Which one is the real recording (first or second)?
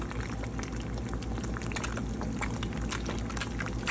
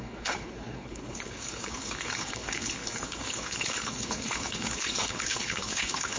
first